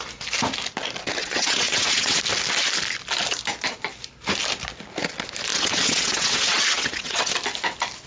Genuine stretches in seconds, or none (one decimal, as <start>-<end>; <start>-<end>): 0.0-1.2; 2.2-5.5; 7.3-8.1